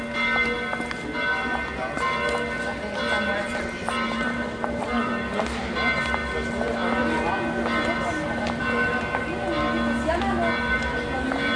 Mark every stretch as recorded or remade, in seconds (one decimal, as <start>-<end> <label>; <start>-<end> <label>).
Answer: 0.0-3.8 recorded; 3.8-5.1 remade; 5.1-11.6 recorded